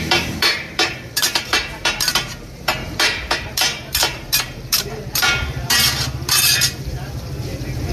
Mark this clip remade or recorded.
remade